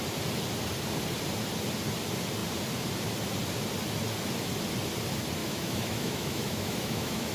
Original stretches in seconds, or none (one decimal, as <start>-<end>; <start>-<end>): 0.0-5.4

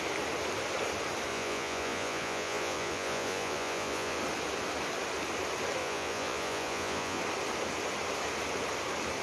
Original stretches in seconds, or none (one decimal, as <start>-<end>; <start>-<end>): 0.0-1.3; 4.2-5.8; 7.2-9.2

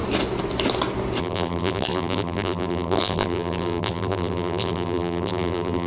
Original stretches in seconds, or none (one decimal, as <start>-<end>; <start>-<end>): 0.0-1.2

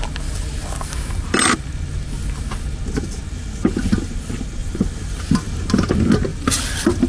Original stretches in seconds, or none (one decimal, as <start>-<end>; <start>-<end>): 0.0-4.6; 5.2-6.3

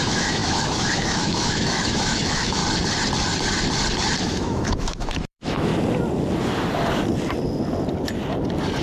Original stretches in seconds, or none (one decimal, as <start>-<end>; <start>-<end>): 2.6-4.2; 5.7-8.8

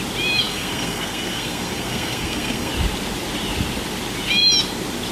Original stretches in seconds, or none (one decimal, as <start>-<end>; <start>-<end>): 0.0-0.5; 2.7-5.1

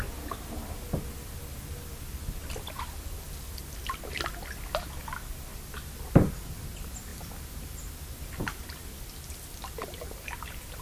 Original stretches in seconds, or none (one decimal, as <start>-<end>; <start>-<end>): 0.0-10.8

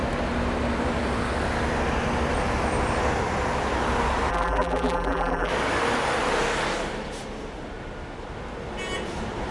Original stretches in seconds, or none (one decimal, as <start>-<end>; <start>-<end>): 0.0-4.3; 5.5-9.5